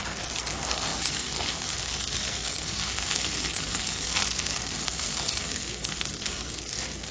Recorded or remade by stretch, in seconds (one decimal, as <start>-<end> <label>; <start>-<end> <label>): 0.0-7.1 remade